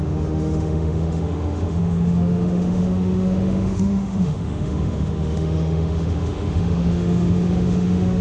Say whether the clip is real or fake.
fake